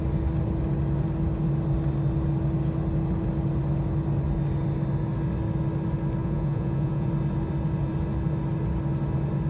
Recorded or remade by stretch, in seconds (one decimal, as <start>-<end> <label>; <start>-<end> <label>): 0.0-6.2 recorded; 6.2-7.1 remade; 7.1-9.5 recorded

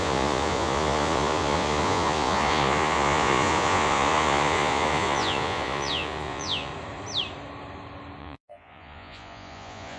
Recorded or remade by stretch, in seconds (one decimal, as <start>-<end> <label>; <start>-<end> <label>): 0.0-6.7 remade; 6.7-8.2 recorded; 8.2-10.0 remade

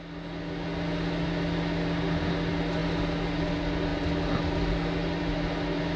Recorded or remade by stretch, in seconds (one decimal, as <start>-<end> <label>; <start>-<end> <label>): 0.0-6.0 recorded

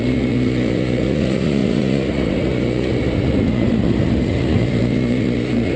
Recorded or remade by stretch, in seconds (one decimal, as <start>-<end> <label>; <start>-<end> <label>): 0.0-5.8 remade

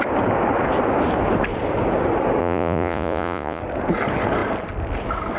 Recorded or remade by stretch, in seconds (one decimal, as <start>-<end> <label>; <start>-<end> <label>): 0.0-2.4 recorded; 2.4-3.6 remade; 3.6-5.4 recorded

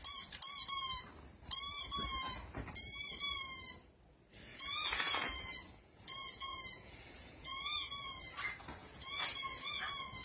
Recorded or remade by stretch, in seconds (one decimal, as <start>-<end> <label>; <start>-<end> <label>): 0.0-4.5 recorded; 4.5-8.3 remade; 8.3-8.8 recorded; 8.8-10.2 remade

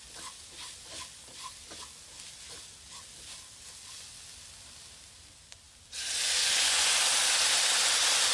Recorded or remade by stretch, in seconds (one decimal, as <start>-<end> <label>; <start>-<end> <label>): 0.0-6.4 recorded; 6.4-6.9 remade; 6.9-8.3 recorded